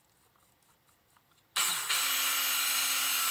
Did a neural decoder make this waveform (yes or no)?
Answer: no